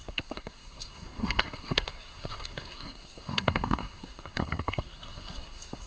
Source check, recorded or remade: remade